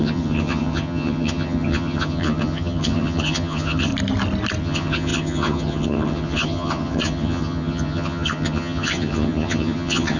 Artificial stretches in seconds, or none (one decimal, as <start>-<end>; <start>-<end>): 0.0-3.9; 4.6-10.2